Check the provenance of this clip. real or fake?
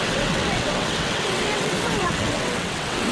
fake